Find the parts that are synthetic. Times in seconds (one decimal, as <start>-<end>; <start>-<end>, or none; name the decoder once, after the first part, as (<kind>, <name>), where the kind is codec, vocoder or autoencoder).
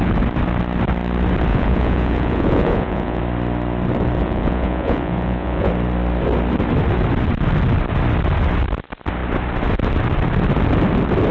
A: 1.5-3.2 (vocoder, Vocos); 4.2-5.7